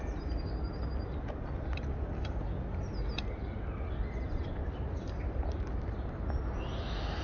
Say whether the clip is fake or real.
real